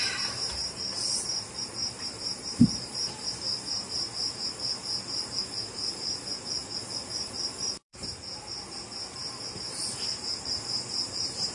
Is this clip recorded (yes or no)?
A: no